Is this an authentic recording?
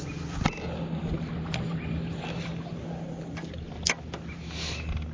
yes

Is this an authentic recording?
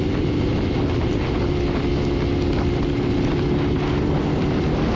yes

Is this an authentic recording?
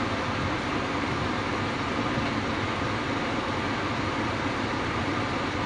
yes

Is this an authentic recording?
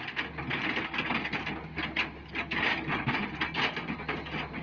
yes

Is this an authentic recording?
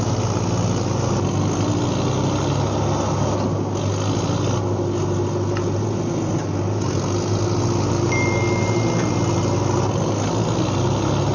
yes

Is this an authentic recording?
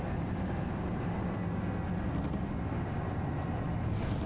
yes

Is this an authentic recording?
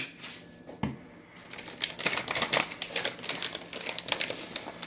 yes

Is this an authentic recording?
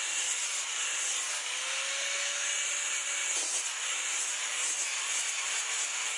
yes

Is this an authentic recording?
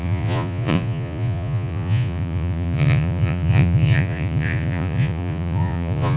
no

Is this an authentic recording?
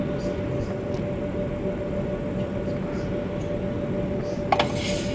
yes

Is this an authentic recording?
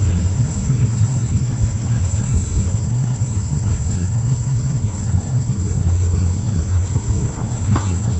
no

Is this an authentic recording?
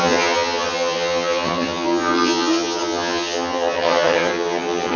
no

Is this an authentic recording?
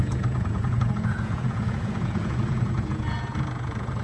no